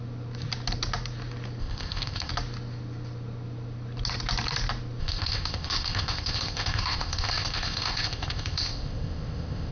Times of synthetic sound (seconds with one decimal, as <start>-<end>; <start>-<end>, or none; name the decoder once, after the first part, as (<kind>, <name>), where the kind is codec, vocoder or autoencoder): 1.6-2.3 (codec, ZipCodec); 5.0-9.7